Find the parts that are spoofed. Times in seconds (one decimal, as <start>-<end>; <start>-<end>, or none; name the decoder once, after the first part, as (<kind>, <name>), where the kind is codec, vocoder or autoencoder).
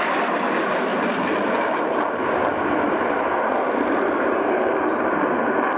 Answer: none